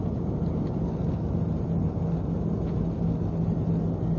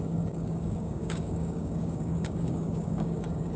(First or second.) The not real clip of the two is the second